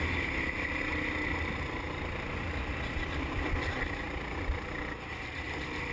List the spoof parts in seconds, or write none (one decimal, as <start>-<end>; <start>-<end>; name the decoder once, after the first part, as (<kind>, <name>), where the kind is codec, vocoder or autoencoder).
none